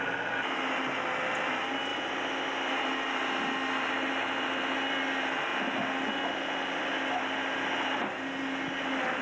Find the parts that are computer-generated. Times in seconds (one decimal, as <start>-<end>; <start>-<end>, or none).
none

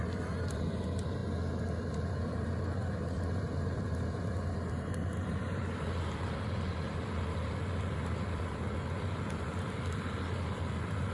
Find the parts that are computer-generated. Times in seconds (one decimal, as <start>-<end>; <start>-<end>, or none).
0.0-1.2; 2.1-11.1

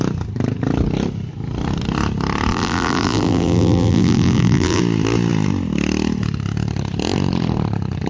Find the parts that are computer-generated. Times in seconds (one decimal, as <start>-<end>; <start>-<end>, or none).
2.5-4.8

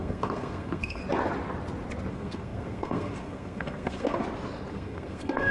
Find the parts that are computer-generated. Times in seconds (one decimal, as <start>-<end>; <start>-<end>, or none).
0.0-1.0; 2.1-4.2; 4.7-5.5

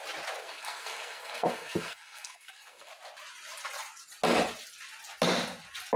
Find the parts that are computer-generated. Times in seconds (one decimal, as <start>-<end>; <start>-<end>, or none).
0.4-2.9

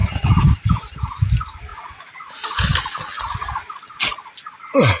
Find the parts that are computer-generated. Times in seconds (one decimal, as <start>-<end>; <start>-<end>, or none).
0.0-1.2